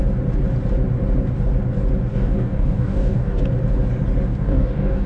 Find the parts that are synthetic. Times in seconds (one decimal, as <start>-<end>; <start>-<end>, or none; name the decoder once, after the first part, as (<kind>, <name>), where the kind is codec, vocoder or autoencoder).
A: 2.1-3.4 (codec, DAC); 4.3-5.1